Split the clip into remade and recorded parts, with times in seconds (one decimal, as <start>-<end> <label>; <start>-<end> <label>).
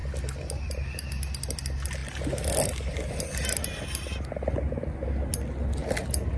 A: 0.0-6.4 recorded